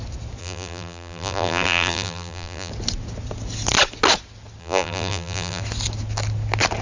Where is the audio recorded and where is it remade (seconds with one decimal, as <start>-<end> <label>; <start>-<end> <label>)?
0.0-0.4 recorded; 0.4-2.7 remade; 2.7-4.6 recorded; 4.6-5.6 remade; 5.6-6.8 recorded